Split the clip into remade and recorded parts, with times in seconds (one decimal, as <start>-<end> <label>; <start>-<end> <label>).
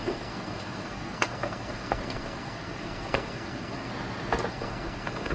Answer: 0.0-3.9 remade; 3.9-4.5 recorded; 4.5-5.3 remade